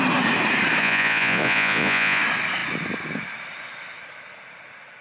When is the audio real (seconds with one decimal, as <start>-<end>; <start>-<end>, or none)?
0.0-0.8; 2.2-5.0